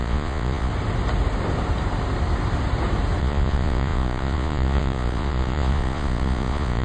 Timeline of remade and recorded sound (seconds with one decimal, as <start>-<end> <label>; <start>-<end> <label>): 0.0-0.7 remade; 0.7-3.2 recorded; 3.2-6.8 remade